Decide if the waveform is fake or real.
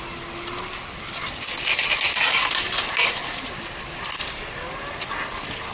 real